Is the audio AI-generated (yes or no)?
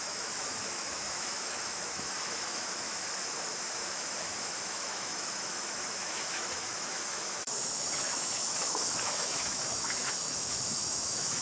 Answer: yes